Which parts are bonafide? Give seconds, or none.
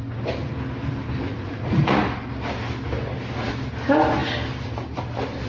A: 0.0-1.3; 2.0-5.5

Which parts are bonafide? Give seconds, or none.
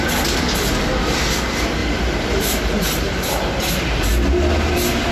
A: 0.0-1.8; 3.6-5.1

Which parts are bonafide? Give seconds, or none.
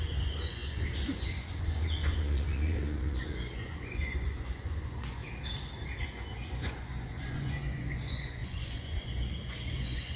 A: 5.2-6.0